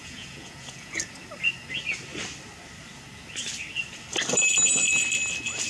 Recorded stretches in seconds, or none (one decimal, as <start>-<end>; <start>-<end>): 1.0-5.7